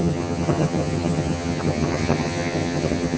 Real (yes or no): no